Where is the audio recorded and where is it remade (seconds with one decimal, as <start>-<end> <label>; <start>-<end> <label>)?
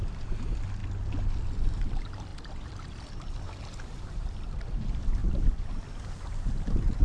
0.0-2.3 recorded; 2.3-4.6 remade; 4.6-5.2 recorded; 5.2-5.7 remade; 5.7-7.0 recorded